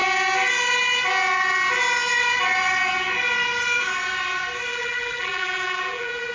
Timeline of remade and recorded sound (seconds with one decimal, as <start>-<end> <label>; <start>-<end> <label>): 0.0-4.7 recorded; 4.7-6.3 remade